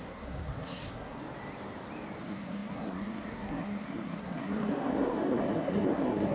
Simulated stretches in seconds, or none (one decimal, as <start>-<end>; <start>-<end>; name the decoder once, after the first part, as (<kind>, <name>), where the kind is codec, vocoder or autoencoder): 0.0-1.2 (codec, SNAC); 2.2-6.3